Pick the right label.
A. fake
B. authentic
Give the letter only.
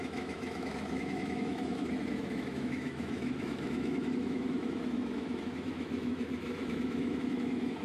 A